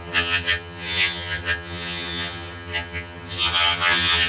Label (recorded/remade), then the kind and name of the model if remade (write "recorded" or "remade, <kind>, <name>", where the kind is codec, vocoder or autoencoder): remade, vocoder, HiFi-GAN